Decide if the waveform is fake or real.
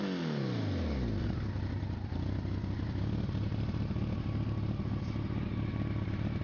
real